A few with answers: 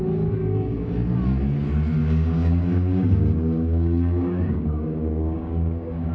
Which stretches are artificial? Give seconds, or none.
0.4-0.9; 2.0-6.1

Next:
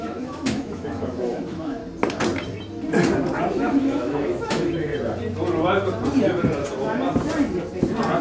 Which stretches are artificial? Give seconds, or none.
0.0-1.8; 3.5-4.9

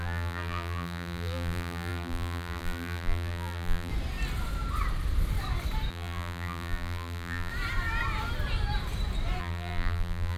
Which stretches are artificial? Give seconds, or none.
0.0-3.9; 5.9-7.5; 9.4-10.4

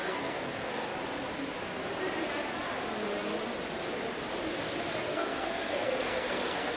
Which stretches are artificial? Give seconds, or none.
0.0-0.9; 5.0-6.8